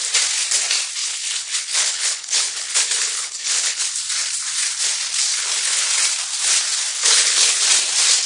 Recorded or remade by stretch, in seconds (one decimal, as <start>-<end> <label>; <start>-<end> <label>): 0.0-1.0 recorded; 1.0-3.9 remade; 3.9-5.3 recorded; 5.3-5.8 remade; 5.8-6.9 recorded; 6.9-7.6 remade; 7.6-8.3 recorded